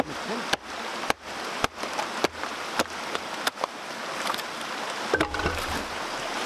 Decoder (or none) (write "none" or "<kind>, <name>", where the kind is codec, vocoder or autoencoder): none